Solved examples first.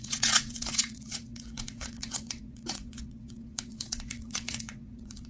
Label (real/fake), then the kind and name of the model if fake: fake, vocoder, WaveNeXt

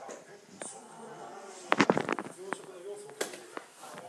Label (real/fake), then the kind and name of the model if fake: real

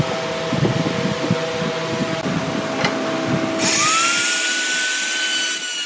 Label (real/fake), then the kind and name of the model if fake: real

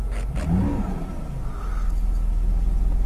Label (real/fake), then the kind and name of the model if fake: real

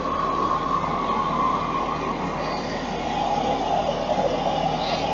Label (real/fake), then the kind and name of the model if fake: real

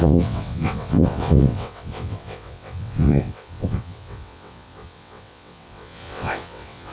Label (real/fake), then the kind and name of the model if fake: fake, vocoder, WaveNeXt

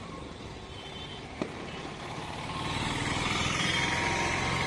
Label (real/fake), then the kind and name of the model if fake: fake, vocoder, BigVGAN v2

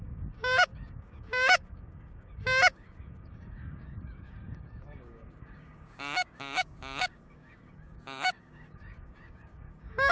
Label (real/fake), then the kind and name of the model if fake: fake, codec, DAC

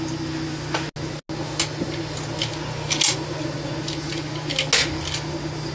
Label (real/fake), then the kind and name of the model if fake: real